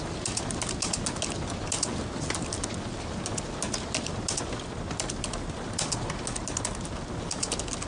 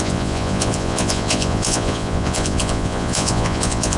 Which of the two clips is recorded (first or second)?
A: first